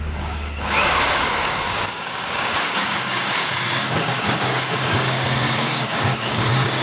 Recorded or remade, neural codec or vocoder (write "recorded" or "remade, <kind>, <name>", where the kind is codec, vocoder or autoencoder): remade, codec, DAC